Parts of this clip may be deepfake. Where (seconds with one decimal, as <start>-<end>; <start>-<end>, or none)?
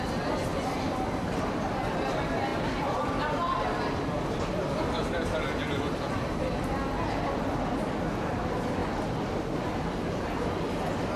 none